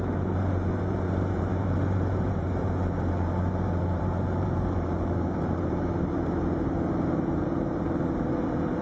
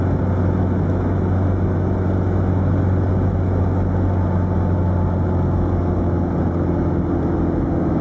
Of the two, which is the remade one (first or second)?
first